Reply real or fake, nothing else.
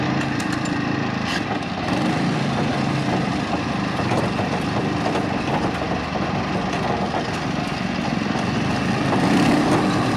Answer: real